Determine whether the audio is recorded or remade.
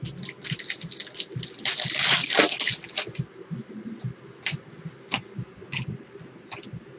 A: recorded